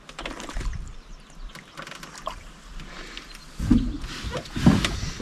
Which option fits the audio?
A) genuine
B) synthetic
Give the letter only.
A